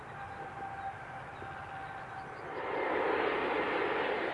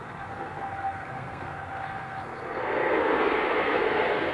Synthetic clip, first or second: second